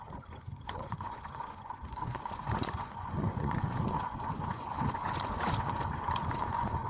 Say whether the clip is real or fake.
fake